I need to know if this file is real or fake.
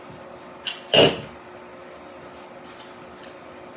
real